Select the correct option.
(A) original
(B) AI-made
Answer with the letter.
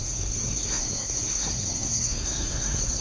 B